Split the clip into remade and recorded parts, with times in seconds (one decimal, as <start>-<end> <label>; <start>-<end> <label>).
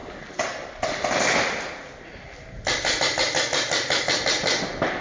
0.0-5.0 recorded